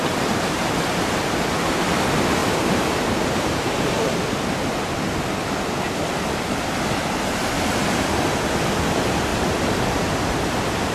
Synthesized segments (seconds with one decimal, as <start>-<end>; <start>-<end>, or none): 2.4-4.4; 9.3-10.2

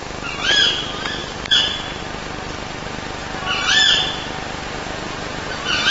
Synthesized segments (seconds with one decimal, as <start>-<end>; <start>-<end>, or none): 1.2-2.0

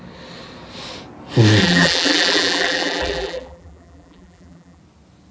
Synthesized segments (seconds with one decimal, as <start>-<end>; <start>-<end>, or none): 1.6-4.8

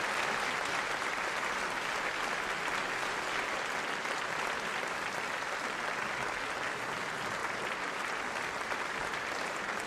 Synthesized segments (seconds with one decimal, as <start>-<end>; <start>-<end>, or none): none

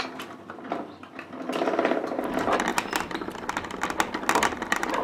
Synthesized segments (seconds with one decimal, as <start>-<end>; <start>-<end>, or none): 0.0-2.7; 4.4-5.0

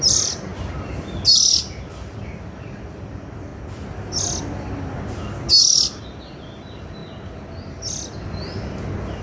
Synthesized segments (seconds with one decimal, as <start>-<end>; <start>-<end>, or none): 0.0-0.5; 1.3-3.5; 6.0-7.0

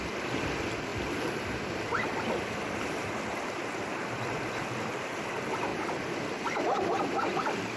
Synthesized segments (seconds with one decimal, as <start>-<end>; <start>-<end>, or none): 0.9-4.7

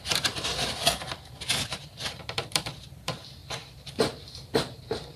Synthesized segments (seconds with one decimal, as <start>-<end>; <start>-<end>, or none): 0.0-3.4; 4.3-5.2